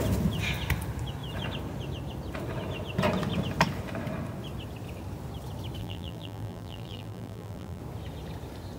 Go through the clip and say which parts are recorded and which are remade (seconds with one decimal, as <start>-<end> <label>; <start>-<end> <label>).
0.0-5.8 recorded; 5.8-7.8 remade; 7.8-8.8 recorded

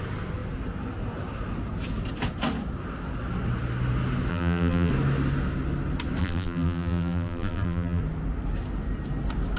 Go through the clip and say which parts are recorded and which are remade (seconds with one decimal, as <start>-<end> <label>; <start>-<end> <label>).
0.0-4.3 recorded; 4.3-4.9 remade; 4.9-6.2 recorded; 6.2-8.0 remade; 8.0-9.6 recorded

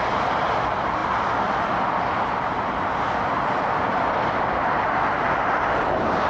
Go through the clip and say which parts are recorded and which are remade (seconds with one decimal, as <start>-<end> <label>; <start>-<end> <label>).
0.0-6.3 recorded